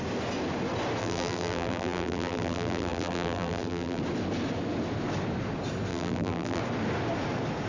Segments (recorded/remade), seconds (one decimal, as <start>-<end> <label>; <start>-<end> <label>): 0.0-1.0 recorded; 1.0-4.0 remade; 4.0-5.9 recorded; 5.9-6.6 remade; 6.6-7.7 recorded